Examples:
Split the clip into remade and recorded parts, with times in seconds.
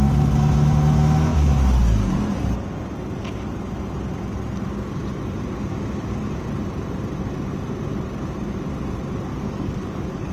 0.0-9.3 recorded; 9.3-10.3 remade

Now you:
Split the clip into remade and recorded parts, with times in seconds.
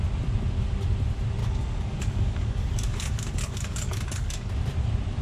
0.0-1.4 recorded; 1.4-4.5 remade; 4.5-5.2 recorded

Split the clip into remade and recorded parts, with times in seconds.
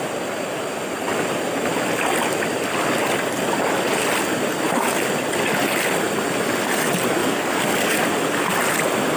0.0-7.2 recorded; 7.2-8.0 remade; 8.0-9.2 recorded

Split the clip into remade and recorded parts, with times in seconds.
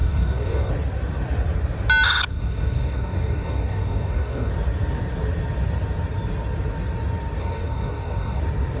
0.0-0.7 remade; 0.7-2.3 recorded; 2.3-4.5 remade; 4.5-7.4 recorded; 7.4-8.4 remade; 8.4-8.8 recorded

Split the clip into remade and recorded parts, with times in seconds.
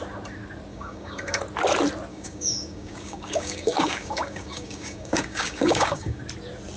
0.0-0.7 recorded; 0.7-1.4 remade; 1.4-2.1 recorded; 2.1-6.2 remade; 6.2-6.8 recorded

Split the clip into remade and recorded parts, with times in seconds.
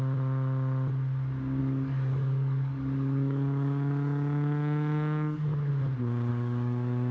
0.0-1.6 recorded; 1.6-5.7 remade; 5.7-6.3 recorded; 6.3-7.1 remade